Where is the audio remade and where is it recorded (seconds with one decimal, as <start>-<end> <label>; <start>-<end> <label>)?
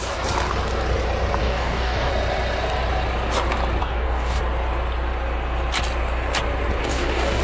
0.0-1.4 recorded; 1.4-2.1 remade; 2.1-3.8 recorded; 3.8-4.4 remade; 4.4-6.8 recorded; 6.8-7.4 remade